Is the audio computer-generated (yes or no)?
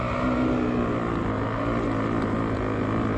no